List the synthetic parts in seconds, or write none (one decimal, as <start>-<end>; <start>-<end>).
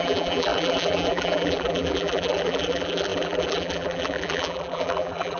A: 0.0-5.4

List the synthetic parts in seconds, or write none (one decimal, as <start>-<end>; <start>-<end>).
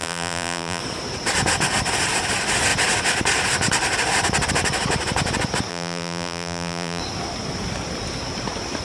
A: 0.0-0.8; 5.7-7.0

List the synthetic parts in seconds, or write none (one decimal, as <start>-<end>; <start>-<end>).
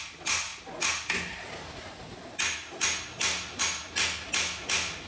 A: none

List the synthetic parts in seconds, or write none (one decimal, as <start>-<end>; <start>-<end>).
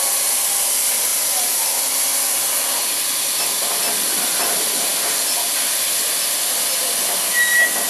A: none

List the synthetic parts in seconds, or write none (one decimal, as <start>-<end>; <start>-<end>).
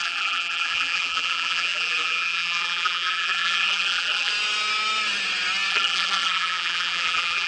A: 0.0-4.3; 5.7-7.5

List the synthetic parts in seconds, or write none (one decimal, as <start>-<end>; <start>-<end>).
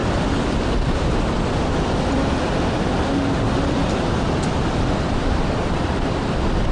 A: 0.0-2.9; 3.8-6.3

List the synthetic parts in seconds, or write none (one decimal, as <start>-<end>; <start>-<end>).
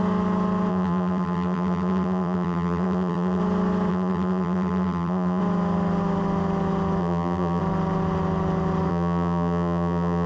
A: 0.7-3.4; 3.9-5.4; 7.0-7.6; 8.9-10.3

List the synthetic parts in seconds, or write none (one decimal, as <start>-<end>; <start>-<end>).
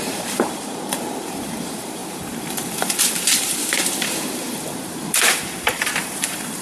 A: 0.0-6.6